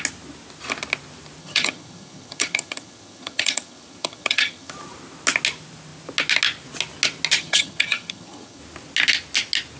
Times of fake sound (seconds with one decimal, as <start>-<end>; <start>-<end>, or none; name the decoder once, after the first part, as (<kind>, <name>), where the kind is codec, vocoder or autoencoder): 1.4-4.7 (vocoder, HiFi-GAN); 7.4-8.6